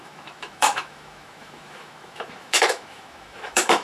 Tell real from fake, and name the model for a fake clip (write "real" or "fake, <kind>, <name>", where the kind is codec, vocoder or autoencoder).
fake, autoencoder, DAC-VAE